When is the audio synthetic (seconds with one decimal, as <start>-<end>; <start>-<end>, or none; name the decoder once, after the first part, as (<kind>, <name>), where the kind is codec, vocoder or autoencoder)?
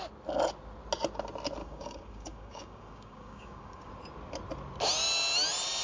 1.6-3.9 (codec, DAC)